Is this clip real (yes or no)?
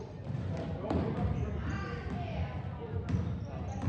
yes